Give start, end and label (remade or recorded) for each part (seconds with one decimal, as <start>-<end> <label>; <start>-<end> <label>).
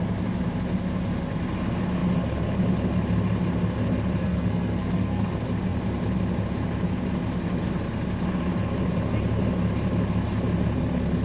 0.0-4.2 recorded; 4.2-5.3 remade; 5.3-11.2 recorded